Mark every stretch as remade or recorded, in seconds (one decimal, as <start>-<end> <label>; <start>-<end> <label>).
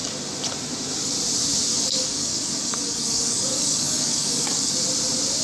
0.0-1.7 recorded; 1.7-4.7 remade; 4.7-5.4 recorded